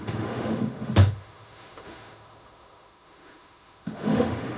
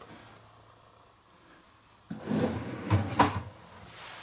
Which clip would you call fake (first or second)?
first